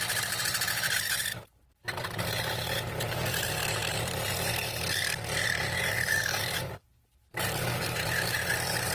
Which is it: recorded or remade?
remade